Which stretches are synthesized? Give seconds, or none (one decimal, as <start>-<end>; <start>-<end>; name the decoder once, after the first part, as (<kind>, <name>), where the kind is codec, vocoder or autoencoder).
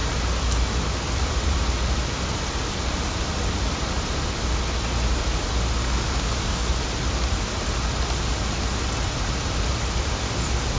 5.8-6.7 (codec, DAC)